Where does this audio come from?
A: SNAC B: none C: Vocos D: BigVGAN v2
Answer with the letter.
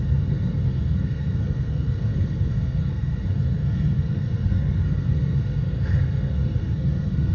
A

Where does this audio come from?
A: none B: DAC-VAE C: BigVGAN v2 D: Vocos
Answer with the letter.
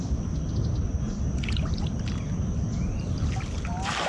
A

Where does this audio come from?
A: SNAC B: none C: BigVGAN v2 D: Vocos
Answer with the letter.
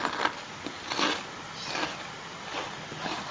B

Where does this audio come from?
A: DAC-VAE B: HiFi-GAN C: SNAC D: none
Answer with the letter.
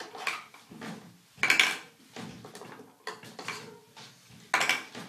D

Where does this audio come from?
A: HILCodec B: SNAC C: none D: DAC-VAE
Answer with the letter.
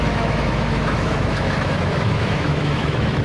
D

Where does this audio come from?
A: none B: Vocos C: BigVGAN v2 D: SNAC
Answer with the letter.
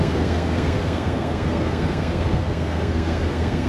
D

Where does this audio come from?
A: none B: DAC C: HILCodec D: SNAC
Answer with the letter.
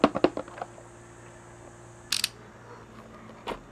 A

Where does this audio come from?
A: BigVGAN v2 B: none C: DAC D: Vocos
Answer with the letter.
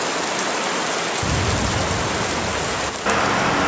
B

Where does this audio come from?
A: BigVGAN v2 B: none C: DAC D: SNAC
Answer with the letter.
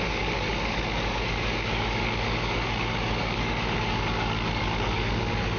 C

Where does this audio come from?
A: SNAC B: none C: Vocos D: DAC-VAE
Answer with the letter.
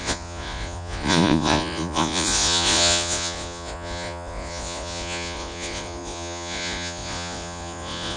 C